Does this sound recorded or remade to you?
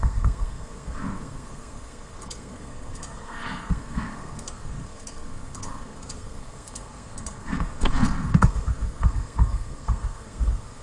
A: remade